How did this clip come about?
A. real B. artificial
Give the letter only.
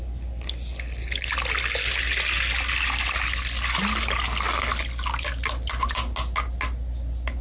A